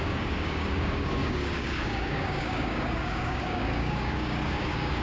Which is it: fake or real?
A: fake